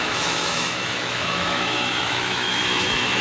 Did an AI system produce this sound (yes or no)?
yes